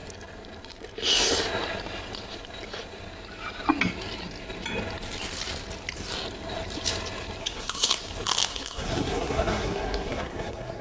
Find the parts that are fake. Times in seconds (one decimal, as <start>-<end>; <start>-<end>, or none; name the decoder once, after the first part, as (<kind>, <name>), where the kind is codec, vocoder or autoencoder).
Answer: 7.4-8.0 (codec, SNAC); 8.5-10.8